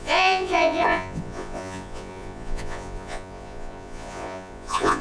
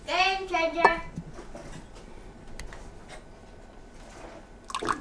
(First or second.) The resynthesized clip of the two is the first